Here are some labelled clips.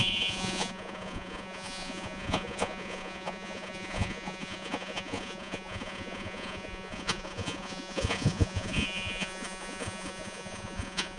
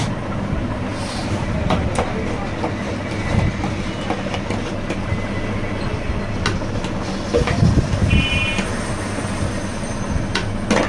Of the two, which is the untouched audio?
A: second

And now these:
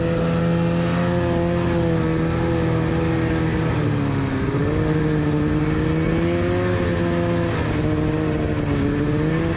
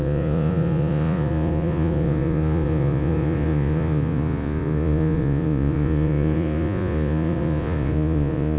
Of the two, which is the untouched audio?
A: first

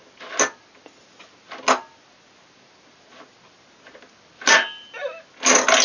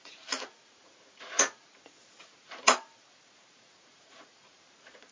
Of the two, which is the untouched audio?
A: first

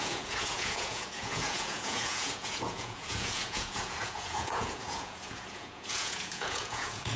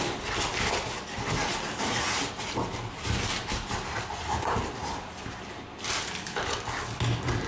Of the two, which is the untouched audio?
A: second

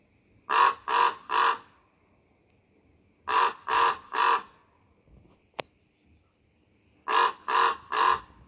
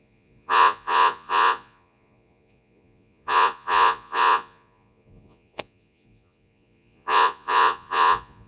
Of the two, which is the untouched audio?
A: first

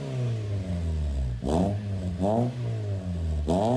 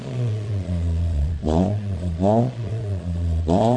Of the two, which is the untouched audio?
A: first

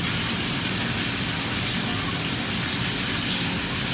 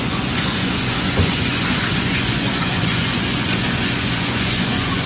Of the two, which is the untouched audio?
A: first